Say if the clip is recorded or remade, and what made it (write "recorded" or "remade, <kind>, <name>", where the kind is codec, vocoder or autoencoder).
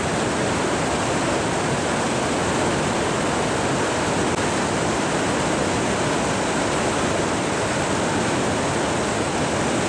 recorded